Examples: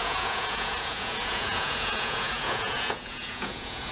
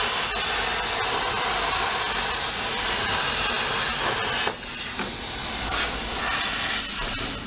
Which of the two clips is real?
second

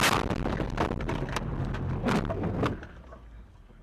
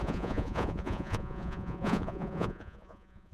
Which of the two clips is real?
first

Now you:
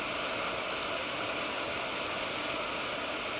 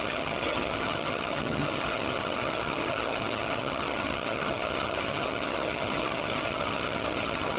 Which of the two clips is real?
first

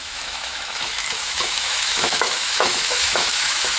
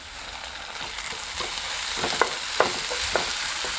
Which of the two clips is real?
second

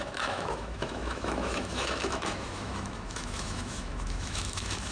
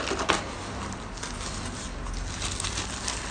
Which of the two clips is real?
second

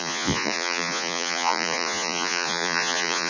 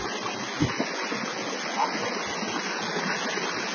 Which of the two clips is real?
second